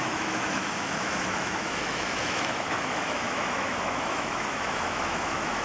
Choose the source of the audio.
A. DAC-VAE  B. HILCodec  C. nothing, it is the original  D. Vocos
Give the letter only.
A